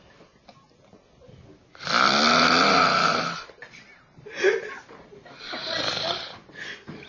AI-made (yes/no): no